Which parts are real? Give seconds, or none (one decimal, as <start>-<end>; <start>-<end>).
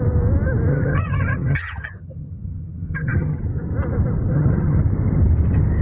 0.0-0.7; 3.4-4.3; 4.8-5.8